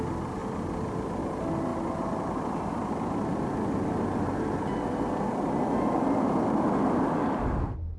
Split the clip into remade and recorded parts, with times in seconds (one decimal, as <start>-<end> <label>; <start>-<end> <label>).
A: 0.0-0.4 recorded; 0.4-1.2 remade; 1.2-1.7 recorded; 1.7-2.4 remade; 2.4-8.0 recorded